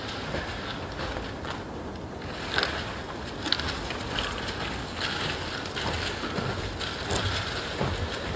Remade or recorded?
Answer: recorded